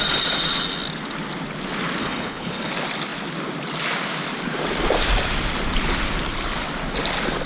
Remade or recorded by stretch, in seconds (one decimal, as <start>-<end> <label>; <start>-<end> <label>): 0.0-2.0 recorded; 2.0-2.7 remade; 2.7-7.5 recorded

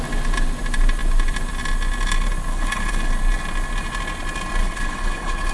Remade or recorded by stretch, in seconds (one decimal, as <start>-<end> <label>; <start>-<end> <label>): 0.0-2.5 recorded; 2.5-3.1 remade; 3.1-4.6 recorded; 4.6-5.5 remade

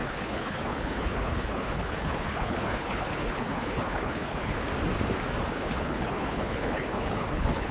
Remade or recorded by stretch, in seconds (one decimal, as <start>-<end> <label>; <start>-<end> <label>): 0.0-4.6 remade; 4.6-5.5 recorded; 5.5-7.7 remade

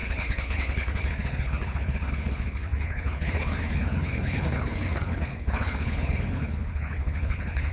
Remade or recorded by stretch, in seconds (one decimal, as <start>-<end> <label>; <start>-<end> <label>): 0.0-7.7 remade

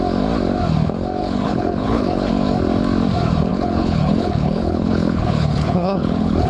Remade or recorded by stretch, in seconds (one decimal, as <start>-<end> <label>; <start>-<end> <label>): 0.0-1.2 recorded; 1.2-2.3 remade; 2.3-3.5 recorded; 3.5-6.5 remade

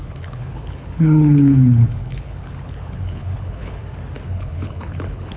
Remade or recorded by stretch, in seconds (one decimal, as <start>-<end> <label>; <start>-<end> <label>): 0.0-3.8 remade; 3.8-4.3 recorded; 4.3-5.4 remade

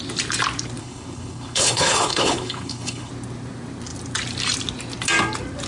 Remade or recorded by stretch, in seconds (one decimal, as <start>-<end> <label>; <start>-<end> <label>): 0.0-0.8 recorded; 0.8-3.1 remade; 3.1-5.7 recorded

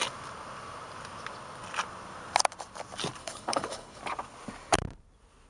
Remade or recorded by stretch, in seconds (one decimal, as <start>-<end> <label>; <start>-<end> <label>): 0.0-3.2 recorded; 3.2-4.0 remade; 4.0-5.5 recorded